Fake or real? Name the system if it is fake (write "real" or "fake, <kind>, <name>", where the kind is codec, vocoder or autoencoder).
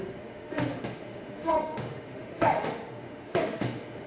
fake, autoencoder, DAC-VAE